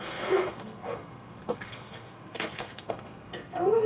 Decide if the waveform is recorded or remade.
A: remade